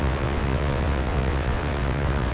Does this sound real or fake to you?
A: fake